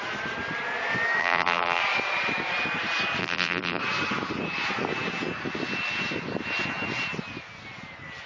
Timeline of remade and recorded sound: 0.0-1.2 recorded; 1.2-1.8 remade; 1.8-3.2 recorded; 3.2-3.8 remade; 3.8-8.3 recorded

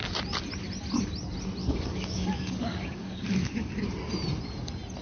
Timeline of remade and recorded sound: 0.0-1.6 recorded; 1.6-3.7 remade; 3.7-5.0 recorded